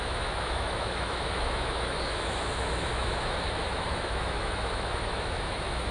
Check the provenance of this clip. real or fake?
fake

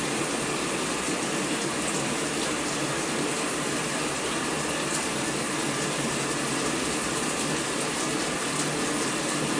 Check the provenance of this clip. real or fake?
real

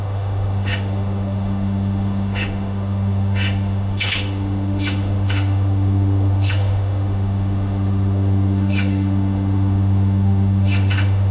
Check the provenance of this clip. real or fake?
fake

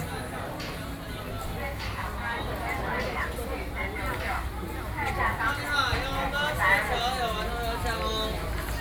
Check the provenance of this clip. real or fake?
real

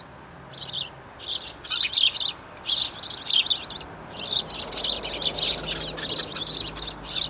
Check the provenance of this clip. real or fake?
real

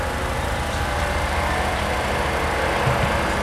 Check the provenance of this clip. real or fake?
real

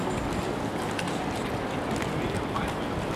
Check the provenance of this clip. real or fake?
real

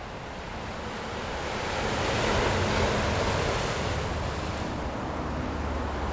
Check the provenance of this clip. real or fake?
real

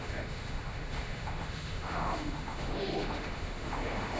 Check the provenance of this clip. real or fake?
fake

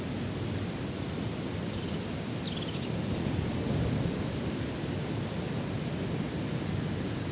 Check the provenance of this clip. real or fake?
real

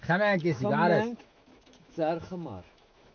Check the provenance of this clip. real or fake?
fake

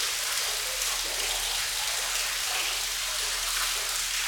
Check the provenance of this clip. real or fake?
real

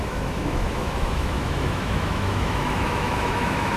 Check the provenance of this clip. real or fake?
fake